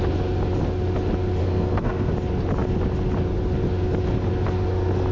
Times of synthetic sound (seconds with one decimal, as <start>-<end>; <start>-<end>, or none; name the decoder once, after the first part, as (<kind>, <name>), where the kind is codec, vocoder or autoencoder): 1.4-2.1 (codec, SNAC)